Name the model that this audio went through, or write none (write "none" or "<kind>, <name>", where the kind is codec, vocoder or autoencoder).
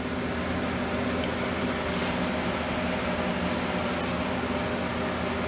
none